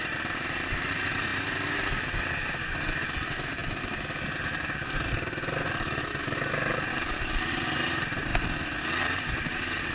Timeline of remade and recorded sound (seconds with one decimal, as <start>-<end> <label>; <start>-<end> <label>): 0.0-3.6 remade; 3.6-6.5 recorded; 6.5-8.3 remade; 8.3-9.0 recorded; 9.0-9.9 remade